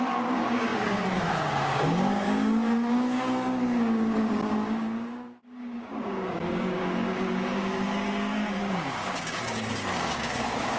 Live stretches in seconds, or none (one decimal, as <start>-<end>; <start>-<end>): none